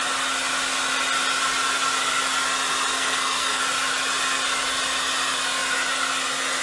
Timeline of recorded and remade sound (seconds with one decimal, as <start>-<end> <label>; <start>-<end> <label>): 0.0-2.9 recorded; 2.9-3.6 remade; 3.6-6.6 recorded